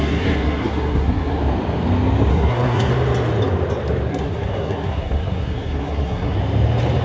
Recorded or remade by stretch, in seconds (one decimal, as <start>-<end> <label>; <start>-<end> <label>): 0.0-1.4 remade; 1.4-2.3 recorded; 2.3-2.9 remade; 2.9-4.1 recorded; 4.1-6.4 remade; 6.4-7.0 recorded